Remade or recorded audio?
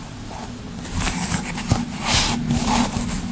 recorded